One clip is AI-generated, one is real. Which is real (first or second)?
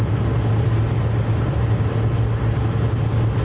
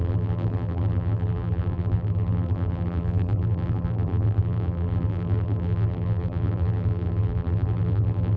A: first